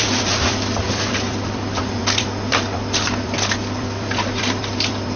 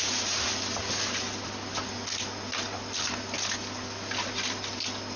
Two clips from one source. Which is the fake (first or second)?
first